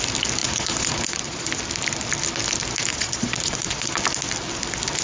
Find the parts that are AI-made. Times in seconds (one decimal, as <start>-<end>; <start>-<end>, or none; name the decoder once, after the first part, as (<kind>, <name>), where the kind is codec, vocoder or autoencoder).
0.4-1.5 (vocoder, Vocos); 2.9-4.0